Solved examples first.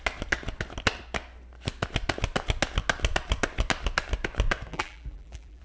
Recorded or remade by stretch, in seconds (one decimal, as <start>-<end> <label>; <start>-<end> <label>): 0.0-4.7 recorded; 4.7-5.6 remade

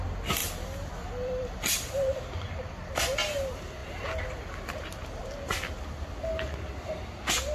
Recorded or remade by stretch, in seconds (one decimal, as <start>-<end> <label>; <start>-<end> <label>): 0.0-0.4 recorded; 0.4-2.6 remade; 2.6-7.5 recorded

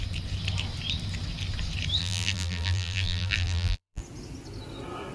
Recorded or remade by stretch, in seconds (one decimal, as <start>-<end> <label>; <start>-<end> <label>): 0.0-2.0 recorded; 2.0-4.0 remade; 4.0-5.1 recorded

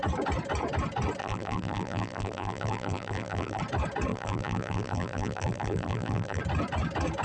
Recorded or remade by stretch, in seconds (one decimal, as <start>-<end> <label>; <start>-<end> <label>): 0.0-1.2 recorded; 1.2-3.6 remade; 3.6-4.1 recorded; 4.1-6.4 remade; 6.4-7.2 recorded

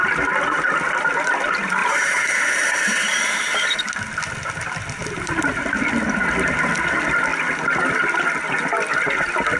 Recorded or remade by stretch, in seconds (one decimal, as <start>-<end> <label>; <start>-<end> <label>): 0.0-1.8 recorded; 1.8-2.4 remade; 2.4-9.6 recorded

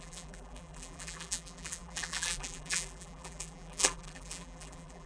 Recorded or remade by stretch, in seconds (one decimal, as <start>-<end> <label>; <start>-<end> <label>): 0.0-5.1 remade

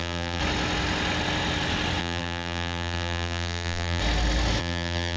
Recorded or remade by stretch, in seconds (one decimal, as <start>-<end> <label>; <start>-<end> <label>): 0.0-0.4 remade; 0.4-2.0 recorded; 2.0-4.0 remade; 4.0-4.6 recorded; 4.6-5.2 remade

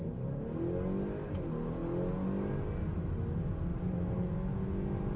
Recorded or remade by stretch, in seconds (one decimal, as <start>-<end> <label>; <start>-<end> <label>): 0.0-3.7 recorded; 3.7-4.2 remade; 4.2-5.2 recorded